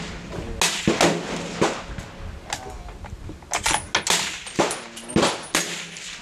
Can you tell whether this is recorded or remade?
recorded